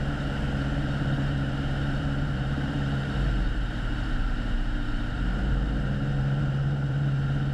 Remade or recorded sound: remade